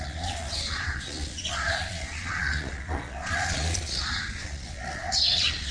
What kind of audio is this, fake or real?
fake